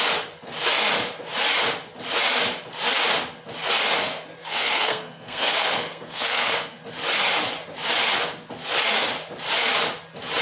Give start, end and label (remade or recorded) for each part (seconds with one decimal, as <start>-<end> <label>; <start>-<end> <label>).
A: 0.0-4.4 recorded; 4.4-6.8 remade; 6.8-10.4 recorded